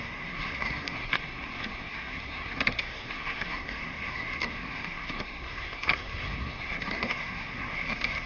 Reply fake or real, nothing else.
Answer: fake